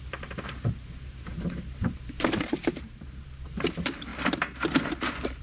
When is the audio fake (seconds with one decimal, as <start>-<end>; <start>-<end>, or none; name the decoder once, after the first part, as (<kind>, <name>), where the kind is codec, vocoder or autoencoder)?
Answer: 0.0-4.1 (vocoder, BigVGAN v2); 5.0-5.4